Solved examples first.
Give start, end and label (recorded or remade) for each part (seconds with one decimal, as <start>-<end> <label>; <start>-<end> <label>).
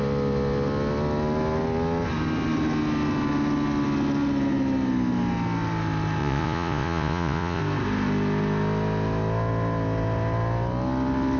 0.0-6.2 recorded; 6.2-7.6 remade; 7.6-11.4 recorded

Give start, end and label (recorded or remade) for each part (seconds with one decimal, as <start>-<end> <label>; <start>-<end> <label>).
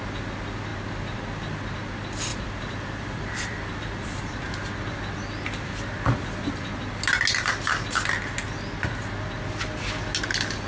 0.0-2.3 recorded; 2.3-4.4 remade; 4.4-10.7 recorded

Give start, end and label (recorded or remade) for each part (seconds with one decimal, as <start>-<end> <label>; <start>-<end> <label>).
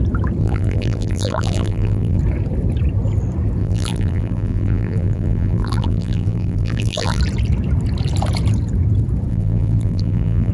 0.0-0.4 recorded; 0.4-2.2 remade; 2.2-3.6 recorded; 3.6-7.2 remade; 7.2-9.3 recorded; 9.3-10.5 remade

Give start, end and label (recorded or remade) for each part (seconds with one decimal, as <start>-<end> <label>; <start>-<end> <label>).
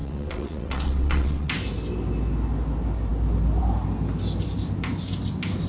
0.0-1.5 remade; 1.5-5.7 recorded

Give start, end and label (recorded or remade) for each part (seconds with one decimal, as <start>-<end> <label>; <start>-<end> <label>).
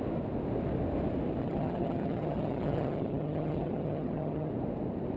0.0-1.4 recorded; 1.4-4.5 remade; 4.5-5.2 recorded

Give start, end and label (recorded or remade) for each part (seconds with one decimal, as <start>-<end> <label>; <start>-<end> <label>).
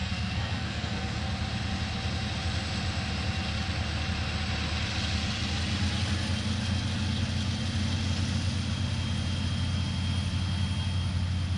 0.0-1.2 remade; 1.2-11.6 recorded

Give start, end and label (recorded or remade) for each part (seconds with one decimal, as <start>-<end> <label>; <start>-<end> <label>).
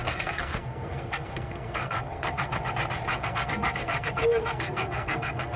0.0-2.5 remade; 2.5-3.1 recorded; 3.1-5.6 remade